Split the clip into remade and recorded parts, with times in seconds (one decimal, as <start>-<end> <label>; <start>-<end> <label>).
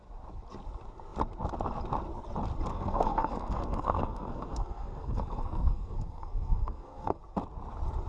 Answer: 0.0-2.7 recorded; 2.7-7.2 remade; 7.2-8.1 recorded